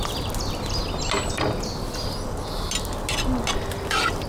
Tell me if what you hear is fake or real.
real